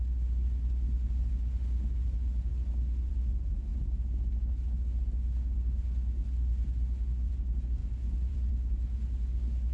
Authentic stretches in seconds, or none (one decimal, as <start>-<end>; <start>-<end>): 0.0-7.8; 8.5-9.7